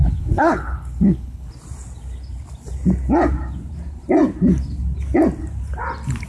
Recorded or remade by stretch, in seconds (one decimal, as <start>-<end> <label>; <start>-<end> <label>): 0.0-1.5 remade; 1.5-6.3 recorded